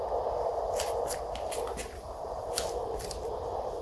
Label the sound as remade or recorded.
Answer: recorded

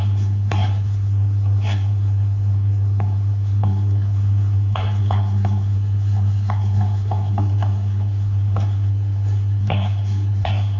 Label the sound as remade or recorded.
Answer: remade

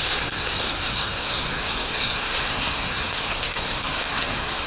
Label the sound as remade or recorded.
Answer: remade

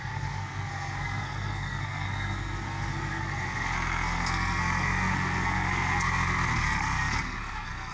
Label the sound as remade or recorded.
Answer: remade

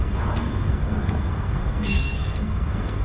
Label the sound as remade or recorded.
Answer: remade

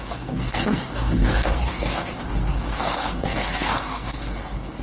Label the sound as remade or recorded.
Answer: remade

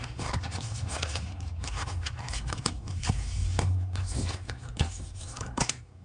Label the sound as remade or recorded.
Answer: remade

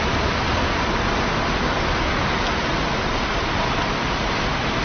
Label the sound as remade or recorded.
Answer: recorded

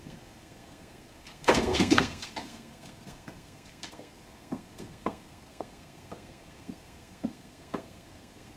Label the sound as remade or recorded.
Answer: remade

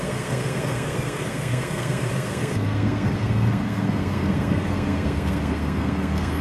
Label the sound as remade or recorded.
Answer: remade